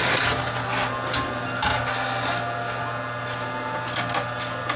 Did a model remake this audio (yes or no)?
no